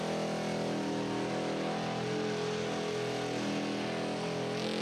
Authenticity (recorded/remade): recorded